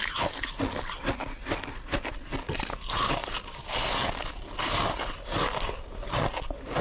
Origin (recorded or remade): recorded